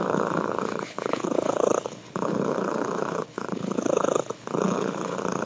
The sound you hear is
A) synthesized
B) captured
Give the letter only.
A